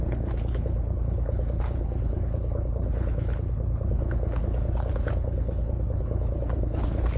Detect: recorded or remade remade